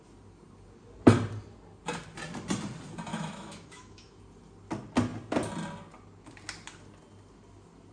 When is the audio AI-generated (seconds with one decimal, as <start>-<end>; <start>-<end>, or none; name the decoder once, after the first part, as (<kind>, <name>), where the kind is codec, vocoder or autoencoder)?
3.1-4.2 (autoencoder, DAC-VAE)

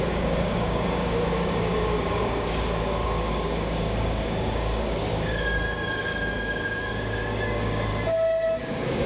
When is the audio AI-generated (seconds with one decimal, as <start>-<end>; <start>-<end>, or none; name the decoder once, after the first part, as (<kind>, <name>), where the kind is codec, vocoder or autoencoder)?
0.0-7.9 (codec, DAC); 8.6-9.1

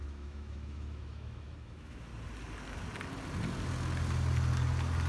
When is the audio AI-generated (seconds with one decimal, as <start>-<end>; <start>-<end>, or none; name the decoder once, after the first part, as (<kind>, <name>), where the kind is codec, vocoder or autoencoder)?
0.0-2.1 (autoencoder, DAC-VAE)

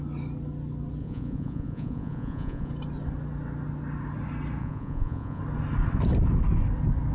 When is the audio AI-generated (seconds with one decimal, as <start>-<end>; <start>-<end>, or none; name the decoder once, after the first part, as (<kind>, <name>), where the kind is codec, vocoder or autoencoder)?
1.0-2.7 (vocoder, Vocos); 4.6-5.4

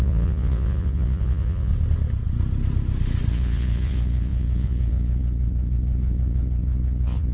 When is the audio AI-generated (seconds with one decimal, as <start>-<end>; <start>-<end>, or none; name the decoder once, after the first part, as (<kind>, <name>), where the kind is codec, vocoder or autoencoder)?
0.0-1.7 (vocoder, Vocos); 3.3-7.3

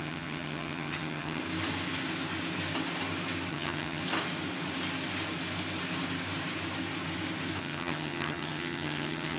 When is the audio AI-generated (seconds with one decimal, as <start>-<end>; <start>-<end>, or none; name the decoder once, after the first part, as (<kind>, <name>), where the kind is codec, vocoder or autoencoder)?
0.0-1.4 (vocoder, HiFi-GAN); 3.5-4.0; 7.6-9.4

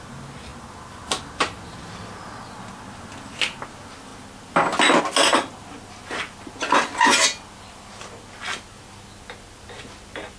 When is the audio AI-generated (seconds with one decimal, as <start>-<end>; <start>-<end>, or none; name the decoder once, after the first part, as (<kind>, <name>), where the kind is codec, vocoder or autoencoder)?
none

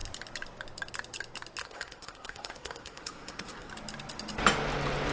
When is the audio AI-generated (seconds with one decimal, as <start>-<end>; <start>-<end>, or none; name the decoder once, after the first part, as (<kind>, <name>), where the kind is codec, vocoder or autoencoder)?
1.6-3.7 (codec, SNAC)